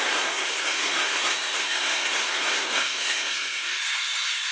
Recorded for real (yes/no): no